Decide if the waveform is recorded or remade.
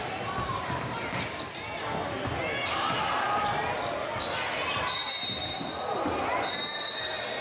recorded